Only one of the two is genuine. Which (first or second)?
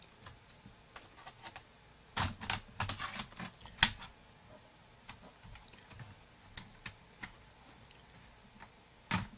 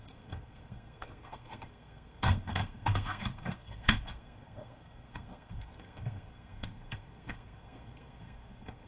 first